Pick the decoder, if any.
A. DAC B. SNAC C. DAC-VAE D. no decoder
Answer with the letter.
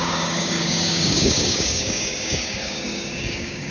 A